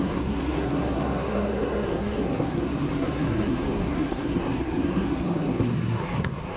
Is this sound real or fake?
fake